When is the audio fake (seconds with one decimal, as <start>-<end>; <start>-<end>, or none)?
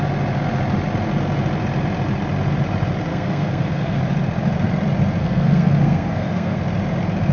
3.1-4.0; 5.2-6.6